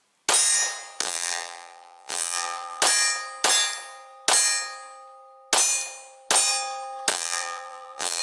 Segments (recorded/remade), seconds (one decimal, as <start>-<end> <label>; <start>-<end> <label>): 0.0-1.0 recorded; 1.0-2.8 remade; 2.8-7.1 recorded; 7.1-8.2 remade